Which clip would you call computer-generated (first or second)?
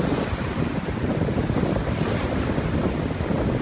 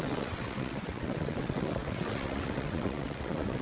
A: second